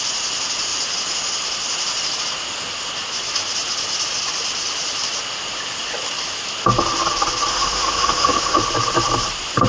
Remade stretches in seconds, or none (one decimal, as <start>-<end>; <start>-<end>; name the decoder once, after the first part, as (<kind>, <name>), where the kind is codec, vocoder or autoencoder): 7.5-8.6 (autoencoder, DAC-VAE)